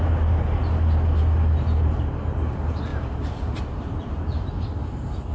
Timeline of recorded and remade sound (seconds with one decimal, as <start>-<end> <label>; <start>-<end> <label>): 0.0-2.9 recorded; 2.9-4.5 remade; 4.5-5.3 recorded